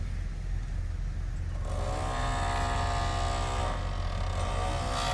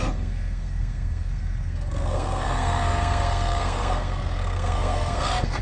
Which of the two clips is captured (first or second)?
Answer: first